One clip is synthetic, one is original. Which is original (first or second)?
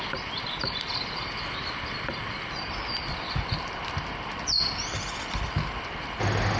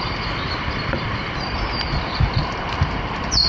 first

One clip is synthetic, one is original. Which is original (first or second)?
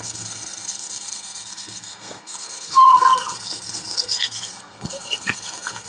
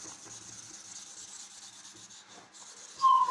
second